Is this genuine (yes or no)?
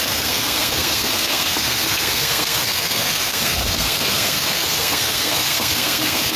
no